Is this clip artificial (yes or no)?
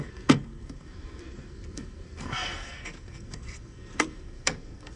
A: yes